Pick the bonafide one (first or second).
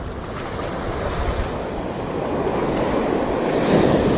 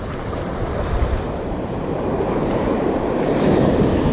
first